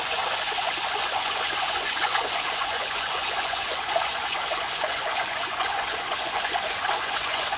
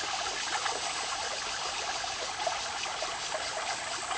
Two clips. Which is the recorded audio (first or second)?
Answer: second